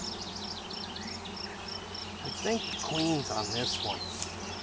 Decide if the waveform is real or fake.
real